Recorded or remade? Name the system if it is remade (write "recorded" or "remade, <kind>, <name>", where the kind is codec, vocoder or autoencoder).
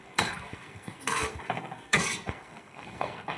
remade, codec, SNAC